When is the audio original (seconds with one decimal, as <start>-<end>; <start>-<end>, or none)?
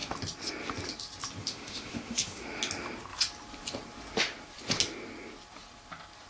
0.0-1.4; 2.6-6.3